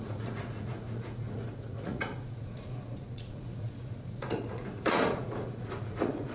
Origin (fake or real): fake